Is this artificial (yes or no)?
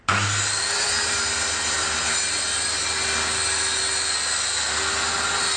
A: no